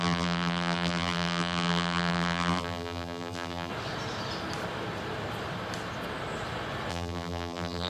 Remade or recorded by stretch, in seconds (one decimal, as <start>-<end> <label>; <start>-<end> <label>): 0.0-3.7 remade; 3.7-6.9 recorded; 6.9-7.9 remade